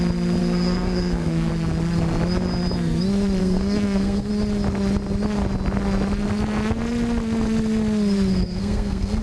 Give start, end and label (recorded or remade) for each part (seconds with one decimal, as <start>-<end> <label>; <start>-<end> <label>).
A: 0.0-0.4 recorded; 0.4-1.5 remade; 1.5-3.4 recorded; 3.4-4.3 remade; 4.3-8.3 recorded; 8.3-9.2 remade